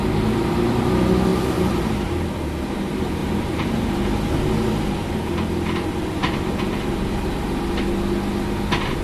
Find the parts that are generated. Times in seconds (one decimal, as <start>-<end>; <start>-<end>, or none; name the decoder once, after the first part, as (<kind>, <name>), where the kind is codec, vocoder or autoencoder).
1.3-2.1 (vocoder, BigVGAN v2); 3.2-3.8